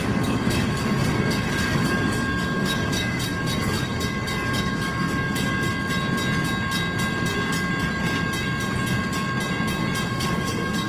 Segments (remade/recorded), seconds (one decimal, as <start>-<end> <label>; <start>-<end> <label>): 0.0-5.7 remade; 5.7-10.1 recorded; 10.1-10.9 remade

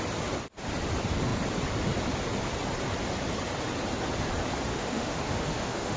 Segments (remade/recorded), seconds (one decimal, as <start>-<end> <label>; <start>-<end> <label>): 0.0-4.7 recorded; 4.7-6.0 remade

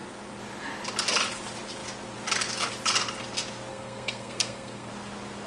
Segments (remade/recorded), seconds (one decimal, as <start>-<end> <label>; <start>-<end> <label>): 0.0-3.7 recorded; 3.7-4.9 remade; 4.9-5.5 recorded

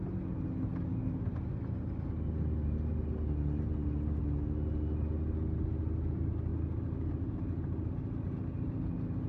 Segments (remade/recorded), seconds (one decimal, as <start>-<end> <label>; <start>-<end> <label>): 0.0-9.3 recorded

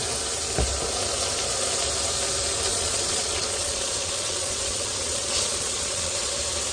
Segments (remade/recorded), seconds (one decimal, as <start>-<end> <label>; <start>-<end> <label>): 0.0-2.7 recorded; 2.7-6.3 remade; 6.3-6.7 recorded

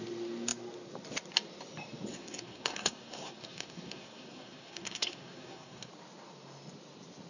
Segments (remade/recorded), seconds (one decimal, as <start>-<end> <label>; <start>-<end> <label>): 0.0-2.1 recorded; 2.1-5.9 remade; 5.9-7.3 recorded

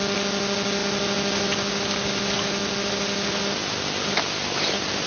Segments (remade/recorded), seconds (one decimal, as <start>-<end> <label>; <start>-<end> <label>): 0.0-5.1 recorded